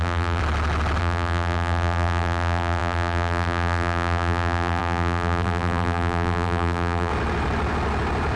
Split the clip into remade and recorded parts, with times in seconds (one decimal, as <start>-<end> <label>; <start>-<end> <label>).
0.0-0.4 remade; 0.4-1.0 recorded; 1.0-7.1 remade; 7.1-8.4 recorded